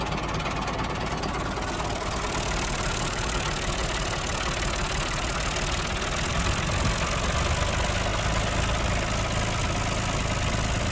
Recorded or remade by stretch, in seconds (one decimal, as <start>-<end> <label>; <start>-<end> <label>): 0.0-10.9 recorded